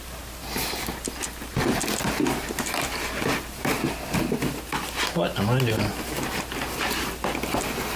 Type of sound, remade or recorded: recorded